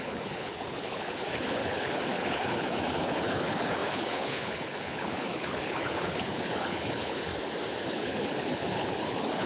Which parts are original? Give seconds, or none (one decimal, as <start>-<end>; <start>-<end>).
7.3-7.9